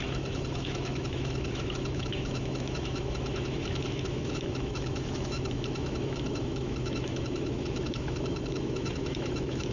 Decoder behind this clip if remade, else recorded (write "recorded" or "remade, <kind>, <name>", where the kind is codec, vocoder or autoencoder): remade, autoencoder, DAC-VAE